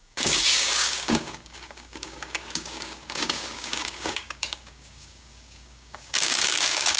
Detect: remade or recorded remade